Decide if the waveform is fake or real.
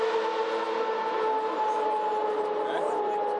real